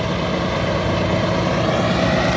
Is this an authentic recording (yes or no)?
yes